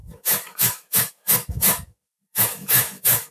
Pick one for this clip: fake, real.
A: fake